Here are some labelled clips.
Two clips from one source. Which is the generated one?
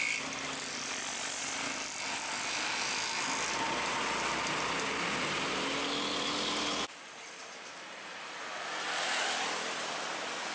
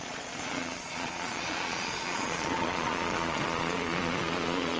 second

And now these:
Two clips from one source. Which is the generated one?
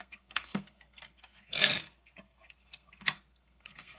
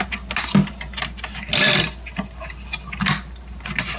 first